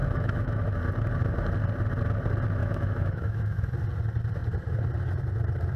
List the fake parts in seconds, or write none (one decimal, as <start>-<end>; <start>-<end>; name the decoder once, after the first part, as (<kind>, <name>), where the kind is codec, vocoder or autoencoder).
0.0-0.6 (autoencoder, DAC-VAE); 2.6-3.7